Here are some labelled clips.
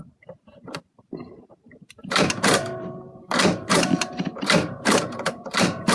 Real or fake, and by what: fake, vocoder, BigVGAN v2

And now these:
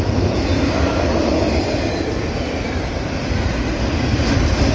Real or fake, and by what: fake, vocoder, BigVGAN v2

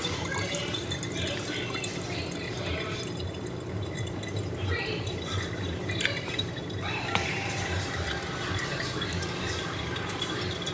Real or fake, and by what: fake, vocoder, BigVGAN v2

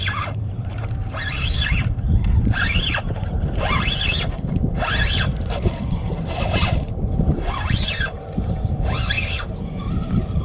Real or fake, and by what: fake, vocoder, BigVGAN v2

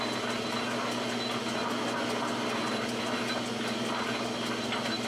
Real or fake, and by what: real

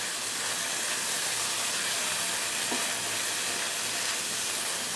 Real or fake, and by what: real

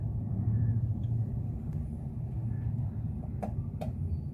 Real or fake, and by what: fake, vocoder, BigVGAN v2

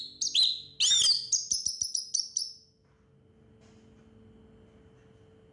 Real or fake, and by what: real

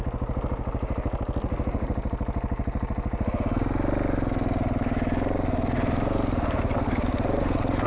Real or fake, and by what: real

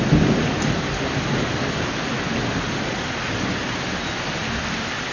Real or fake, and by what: real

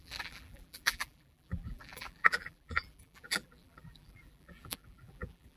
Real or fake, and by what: fake, vocoder, BigVGAN v2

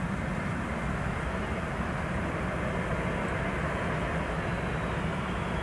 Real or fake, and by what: real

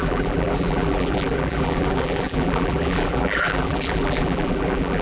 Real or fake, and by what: fake, vocoder, BigVGAN v2